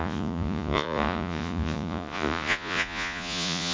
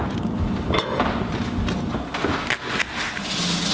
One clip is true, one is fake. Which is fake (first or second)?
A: first